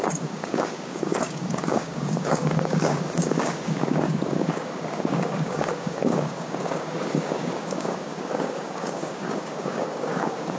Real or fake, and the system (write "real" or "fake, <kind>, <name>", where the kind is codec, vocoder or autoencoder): fake, codec, DAC